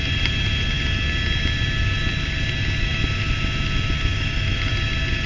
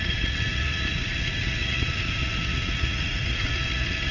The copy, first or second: second